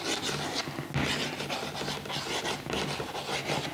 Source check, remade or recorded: recorded